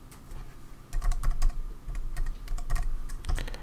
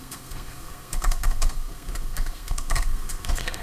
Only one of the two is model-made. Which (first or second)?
second